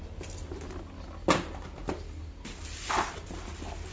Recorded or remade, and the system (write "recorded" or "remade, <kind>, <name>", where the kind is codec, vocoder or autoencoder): recorded